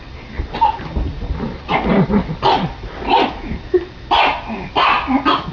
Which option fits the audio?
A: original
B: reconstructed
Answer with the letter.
A